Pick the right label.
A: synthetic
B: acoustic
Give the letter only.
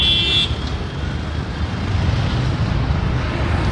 B